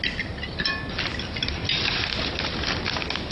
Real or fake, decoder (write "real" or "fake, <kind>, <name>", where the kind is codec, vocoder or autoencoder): real